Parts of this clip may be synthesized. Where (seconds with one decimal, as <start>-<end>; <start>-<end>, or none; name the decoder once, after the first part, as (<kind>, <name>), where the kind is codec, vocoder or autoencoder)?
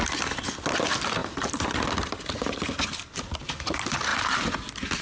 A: 1.2-3.2 (vocoder, BigVGAN v2)